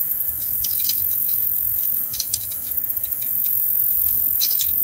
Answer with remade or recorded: remade